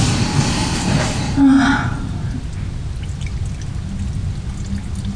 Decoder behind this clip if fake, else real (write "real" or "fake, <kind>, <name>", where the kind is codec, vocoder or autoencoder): real